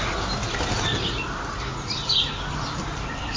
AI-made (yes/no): no